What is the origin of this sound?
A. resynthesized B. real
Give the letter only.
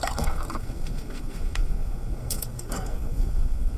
A